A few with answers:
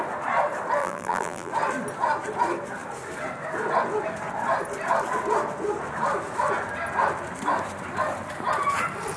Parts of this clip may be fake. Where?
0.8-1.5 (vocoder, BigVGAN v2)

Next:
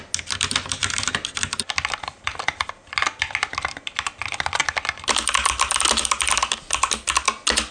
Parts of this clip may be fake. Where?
none

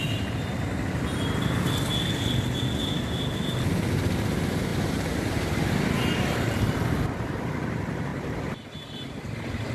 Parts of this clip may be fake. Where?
4.7-5.7 (vocoder, BigVGAN v2)

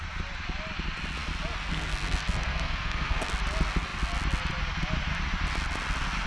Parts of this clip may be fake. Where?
1.7-3.3 (codec, SNAC)

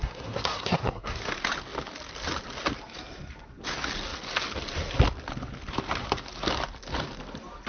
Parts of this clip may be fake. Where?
0.0-1.2 (codec, SNAC)

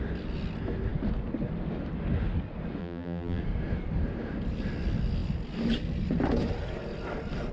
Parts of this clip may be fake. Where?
2.8-3.4 (vocoder, BigVGAN v2)

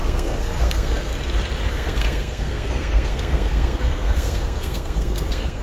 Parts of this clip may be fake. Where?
0.0-1.1 (codec, SNAC); 1.7-5.6